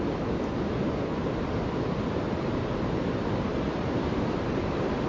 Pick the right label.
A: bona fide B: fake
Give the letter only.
A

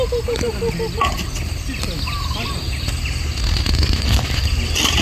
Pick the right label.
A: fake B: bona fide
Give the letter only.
B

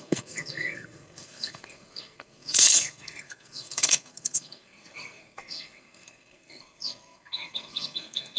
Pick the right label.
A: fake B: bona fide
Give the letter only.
A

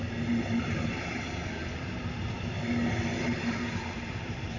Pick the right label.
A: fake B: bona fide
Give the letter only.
B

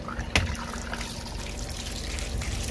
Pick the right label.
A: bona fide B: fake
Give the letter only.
A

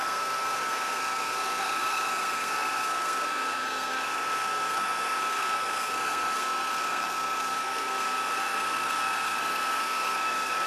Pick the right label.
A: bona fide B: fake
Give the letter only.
B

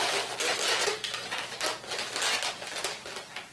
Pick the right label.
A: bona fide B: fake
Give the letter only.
A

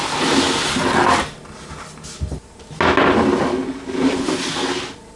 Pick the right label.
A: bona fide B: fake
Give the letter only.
A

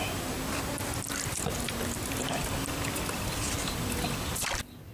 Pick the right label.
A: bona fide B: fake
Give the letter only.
A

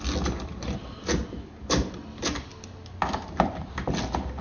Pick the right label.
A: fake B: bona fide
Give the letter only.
B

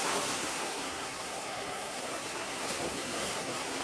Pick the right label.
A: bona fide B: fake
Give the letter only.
B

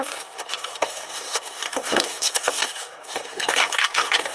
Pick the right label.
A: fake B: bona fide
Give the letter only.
A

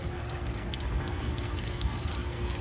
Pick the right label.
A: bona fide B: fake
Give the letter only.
B